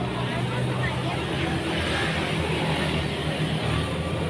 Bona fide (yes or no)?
yes